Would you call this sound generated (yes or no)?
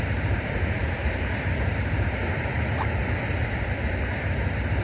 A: no